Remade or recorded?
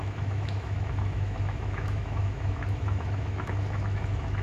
remade